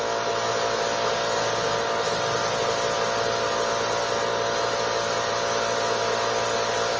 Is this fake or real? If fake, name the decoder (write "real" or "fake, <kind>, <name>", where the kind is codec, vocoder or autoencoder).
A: real